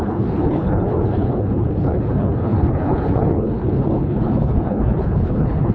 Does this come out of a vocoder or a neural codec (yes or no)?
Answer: yes